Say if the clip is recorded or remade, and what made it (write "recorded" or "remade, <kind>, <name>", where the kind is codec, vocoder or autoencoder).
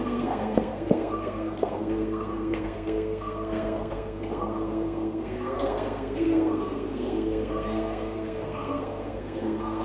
remade, codec, SNAC